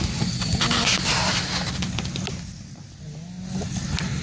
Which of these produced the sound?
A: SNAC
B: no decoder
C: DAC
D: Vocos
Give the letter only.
B